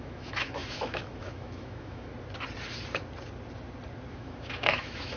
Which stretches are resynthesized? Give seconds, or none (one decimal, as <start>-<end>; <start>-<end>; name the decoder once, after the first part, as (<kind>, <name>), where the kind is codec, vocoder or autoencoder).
0.0-2.1 (autoencoder, DAC-VAE); 4.1-5.2